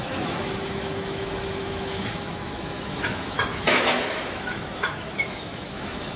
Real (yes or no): no